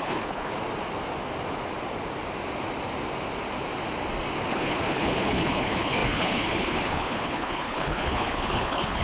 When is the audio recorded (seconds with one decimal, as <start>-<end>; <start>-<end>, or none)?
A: 0.5-4.5